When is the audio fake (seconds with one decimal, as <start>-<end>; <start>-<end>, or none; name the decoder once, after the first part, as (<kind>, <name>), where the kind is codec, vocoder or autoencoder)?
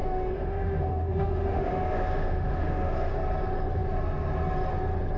0.0-3.1 (autoencoder, DAC-VAE)